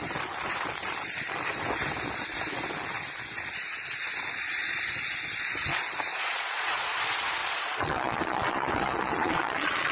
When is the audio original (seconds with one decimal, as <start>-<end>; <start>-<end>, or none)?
0.0-6.1; 6.9-7.4